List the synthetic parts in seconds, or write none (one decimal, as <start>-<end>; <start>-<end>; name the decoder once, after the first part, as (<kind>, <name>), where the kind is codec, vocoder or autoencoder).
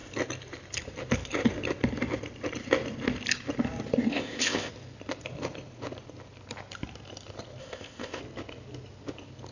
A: 4.1-4.7 (codec, ZipCodec); 7.6-8.2